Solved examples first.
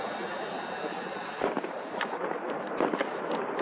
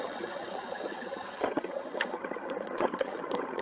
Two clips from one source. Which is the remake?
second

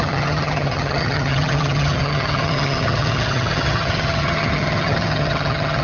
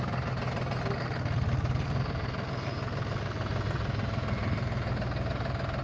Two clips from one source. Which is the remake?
first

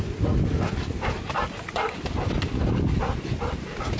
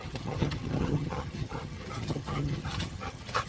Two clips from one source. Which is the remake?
second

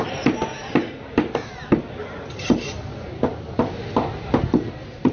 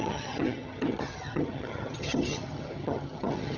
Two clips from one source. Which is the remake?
second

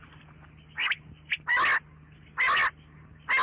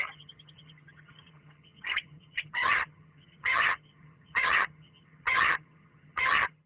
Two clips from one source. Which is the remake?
second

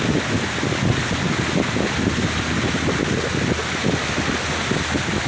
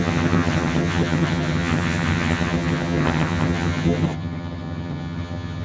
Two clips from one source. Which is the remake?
second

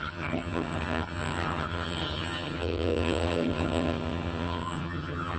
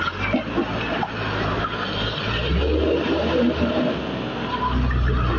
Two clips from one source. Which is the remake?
first